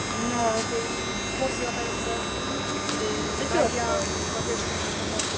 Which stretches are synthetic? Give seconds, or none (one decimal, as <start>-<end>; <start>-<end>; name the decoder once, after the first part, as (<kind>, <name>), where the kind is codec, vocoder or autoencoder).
4.6-5.4 (codec, DAC)